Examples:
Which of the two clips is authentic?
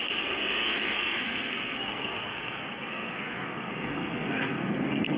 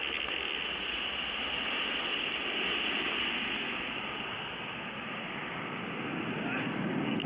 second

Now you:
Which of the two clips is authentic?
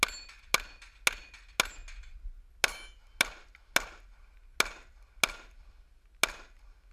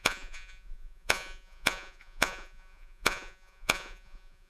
first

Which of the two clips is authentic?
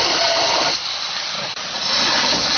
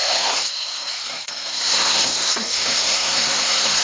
first